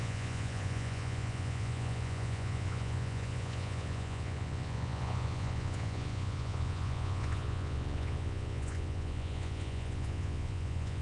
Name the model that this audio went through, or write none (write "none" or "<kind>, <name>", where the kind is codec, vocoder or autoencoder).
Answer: vocoder, Vocos